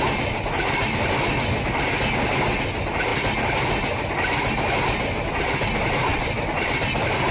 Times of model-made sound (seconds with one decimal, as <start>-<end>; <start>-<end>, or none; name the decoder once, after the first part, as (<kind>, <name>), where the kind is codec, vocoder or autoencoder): none